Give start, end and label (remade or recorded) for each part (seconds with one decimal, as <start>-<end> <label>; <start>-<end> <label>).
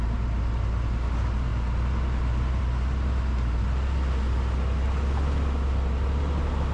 0.0-6.7 recorded